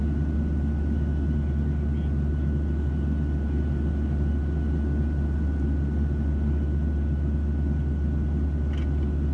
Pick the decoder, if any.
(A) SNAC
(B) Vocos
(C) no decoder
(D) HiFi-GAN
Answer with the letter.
C